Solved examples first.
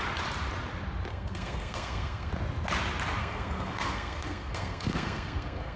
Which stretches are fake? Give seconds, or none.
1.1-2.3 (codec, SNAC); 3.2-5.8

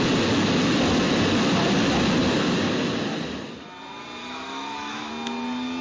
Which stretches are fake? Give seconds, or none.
4.2-5.1 (autoencoder, DAC-VAE)

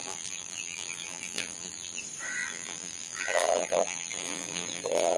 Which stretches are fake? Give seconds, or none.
0.0-2.0 (vocoder, BigVGAN v2); 2.4-5.2

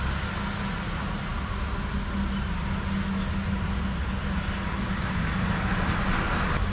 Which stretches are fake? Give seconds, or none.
none